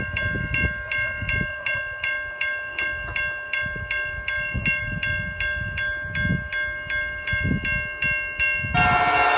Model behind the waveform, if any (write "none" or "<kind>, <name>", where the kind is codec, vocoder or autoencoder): none